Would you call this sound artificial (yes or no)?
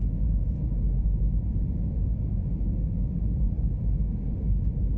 no